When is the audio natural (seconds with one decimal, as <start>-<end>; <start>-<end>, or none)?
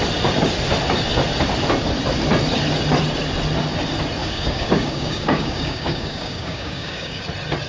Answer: 0.0-4.2; 7.2-7.7